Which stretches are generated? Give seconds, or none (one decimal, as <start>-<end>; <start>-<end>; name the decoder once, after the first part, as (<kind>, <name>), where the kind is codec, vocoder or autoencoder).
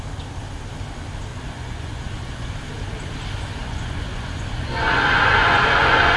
1.3-2.5 (vocoder, Vocos); 3.6-6.2